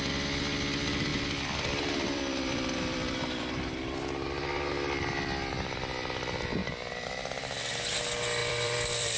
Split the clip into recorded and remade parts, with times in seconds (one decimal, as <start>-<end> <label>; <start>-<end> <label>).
0.0-1.1 recorded; 1.1-4.0 remade; 4.0-6.6 recorded; 6.6-7.1 remade; 7.1-8.4 recorded; 8.4-9.2 remade